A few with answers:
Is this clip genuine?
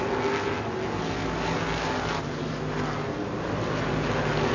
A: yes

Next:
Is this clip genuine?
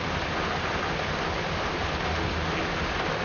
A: yes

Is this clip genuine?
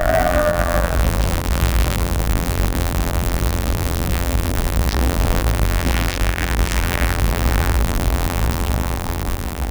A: no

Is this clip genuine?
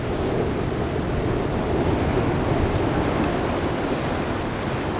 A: yes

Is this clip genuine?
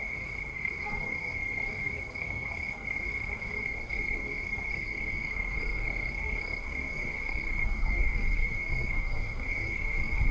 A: no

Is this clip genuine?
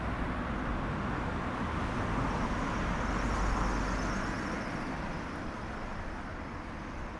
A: yes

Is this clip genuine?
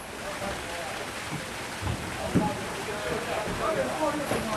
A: yes